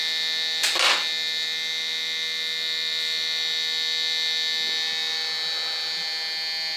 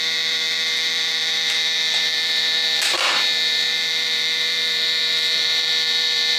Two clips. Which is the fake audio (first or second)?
second